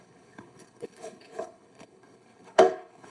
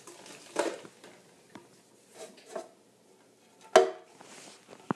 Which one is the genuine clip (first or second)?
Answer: second